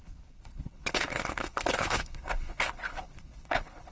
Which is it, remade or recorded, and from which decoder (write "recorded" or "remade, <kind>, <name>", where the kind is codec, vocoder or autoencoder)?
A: remade, codec, HILCodec